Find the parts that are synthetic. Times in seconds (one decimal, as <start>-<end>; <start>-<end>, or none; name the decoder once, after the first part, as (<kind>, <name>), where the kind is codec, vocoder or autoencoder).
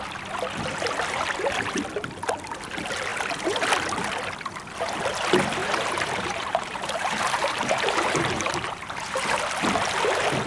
5.6-9.4 (vocoder, BigVGAN v2)